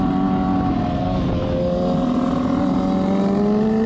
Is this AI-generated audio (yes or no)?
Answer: no